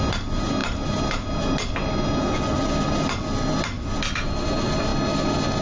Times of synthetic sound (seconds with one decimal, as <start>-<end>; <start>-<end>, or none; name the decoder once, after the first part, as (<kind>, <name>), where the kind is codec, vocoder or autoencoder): none